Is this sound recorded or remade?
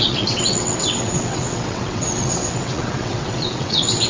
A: remade